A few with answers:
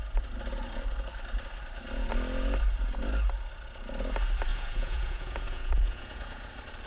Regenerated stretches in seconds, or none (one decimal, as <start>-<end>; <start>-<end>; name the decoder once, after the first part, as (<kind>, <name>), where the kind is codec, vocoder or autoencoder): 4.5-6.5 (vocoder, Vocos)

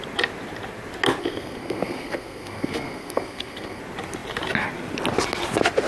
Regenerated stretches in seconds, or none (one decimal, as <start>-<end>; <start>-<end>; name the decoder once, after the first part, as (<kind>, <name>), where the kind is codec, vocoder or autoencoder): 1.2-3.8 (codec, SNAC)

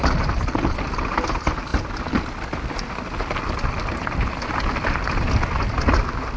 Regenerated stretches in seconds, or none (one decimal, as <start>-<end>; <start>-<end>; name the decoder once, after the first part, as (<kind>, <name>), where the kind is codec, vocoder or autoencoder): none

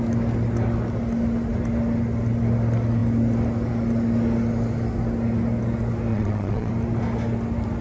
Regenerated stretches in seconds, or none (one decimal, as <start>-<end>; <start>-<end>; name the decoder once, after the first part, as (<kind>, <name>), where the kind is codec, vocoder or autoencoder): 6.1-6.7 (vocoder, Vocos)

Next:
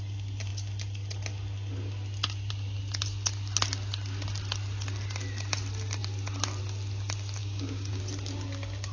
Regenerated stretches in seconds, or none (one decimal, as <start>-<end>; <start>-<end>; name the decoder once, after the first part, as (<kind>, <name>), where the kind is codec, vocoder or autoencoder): 7.4-8.0 (codec, DAC)